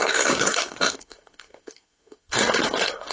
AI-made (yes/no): yes